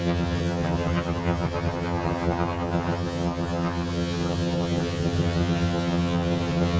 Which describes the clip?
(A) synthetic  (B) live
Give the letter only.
A